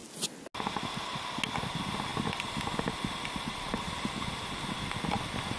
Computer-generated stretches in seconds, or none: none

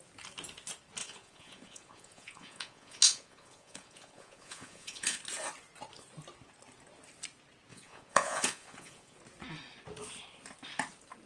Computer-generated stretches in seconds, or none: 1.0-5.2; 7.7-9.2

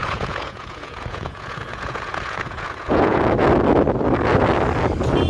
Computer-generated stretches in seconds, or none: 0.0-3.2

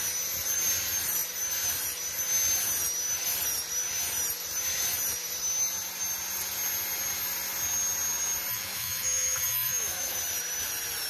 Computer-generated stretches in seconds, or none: 8.5-10.2

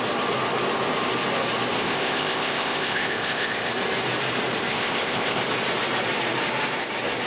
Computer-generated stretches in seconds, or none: 1.7-3.7; 4.7-5.4

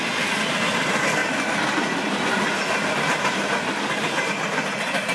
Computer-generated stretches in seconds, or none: none

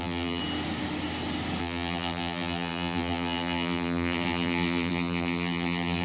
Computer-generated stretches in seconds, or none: 0.0-0.4; 1.6-6.0